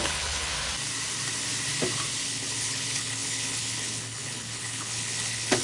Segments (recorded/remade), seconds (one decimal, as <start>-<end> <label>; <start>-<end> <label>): 0.0-0.5 remade; 0.5-2.2 recorded; 2.2-5.6 remade